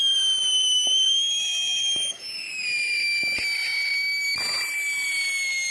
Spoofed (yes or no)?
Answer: no